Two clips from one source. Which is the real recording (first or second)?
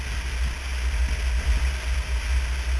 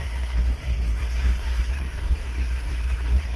first